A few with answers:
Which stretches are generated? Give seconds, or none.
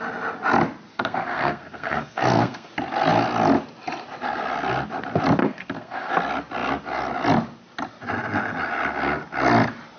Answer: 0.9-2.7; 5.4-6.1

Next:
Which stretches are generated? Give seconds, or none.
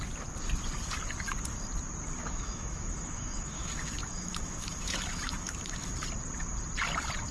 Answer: 2.2-5.9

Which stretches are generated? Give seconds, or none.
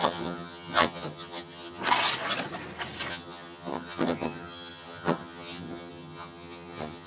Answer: 0.0-1.8; 3.1-7.1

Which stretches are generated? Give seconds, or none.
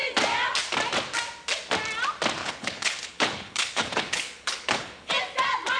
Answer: 2.4-5.1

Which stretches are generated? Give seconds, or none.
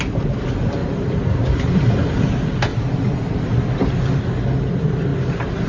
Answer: none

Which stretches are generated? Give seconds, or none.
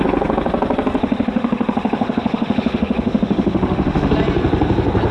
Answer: 1.0-4.1